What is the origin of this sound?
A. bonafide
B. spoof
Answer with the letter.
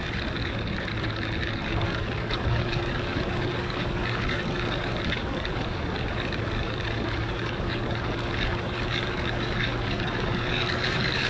B